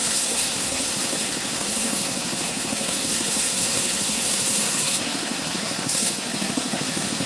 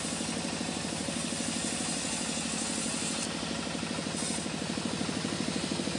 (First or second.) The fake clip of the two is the first